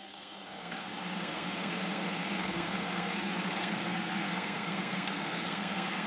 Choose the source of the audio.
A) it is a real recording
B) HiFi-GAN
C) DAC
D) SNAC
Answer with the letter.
D